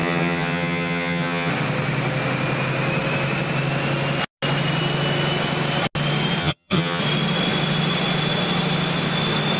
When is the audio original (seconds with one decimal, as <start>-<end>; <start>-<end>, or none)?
1.5-6.4; 7.0-9.6